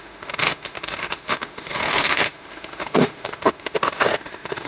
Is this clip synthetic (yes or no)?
yes